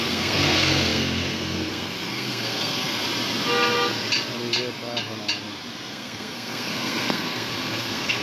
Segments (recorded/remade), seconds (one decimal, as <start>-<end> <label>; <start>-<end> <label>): 0.0-3.0 remade; 3.0-5.9 recorded; 5.9-8.2 remade